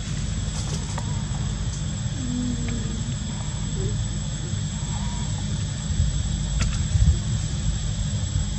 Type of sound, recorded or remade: recorded